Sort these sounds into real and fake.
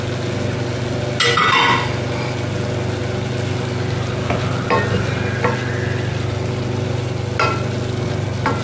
real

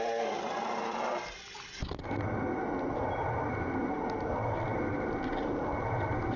real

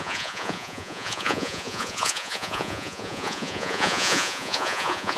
fake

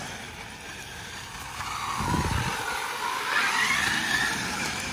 real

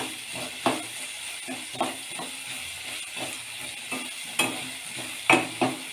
real